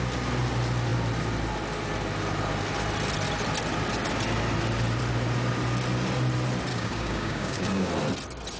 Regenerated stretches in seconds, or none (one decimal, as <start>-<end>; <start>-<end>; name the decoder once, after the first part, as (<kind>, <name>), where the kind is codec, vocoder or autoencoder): 6.7-7.9 (codec, DAC)

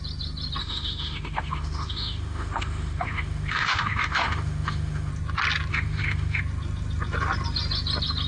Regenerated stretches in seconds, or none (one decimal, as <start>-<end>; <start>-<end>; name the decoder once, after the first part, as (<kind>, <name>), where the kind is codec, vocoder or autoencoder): 0.6-5.1 (autoencoder, DAC-VAE); 5.7-6.4

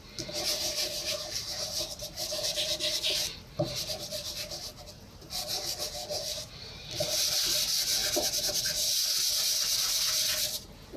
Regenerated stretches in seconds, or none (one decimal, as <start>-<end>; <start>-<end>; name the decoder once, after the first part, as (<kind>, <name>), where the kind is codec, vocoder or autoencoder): none

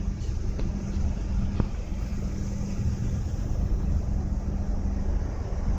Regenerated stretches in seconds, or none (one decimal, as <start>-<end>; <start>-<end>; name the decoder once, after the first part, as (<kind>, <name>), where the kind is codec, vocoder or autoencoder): none

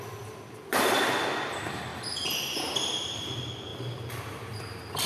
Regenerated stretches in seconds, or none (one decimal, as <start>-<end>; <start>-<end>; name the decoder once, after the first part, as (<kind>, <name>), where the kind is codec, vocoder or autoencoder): none

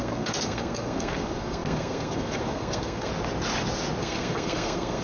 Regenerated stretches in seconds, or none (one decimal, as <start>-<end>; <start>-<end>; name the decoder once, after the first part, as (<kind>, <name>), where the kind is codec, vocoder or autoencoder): 0.0-3.1 (codec, SNAC); 4.0-5.0